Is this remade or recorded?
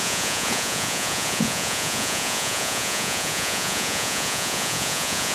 remade